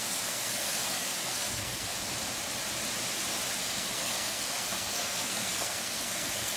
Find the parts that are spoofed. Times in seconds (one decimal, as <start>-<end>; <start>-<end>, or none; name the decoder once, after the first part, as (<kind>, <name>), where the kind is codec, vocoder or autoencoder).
0.0-1.9 (codec, SNAC); 3.6-6.6